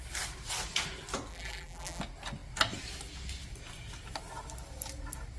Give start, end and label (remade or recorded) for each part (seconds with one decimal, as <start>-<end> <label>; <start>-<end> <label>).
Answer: 0.0-1.3 recorded; 1.3-2.0 remade; 2.0-5.4 recorded